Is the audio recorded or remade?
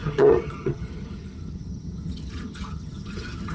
remade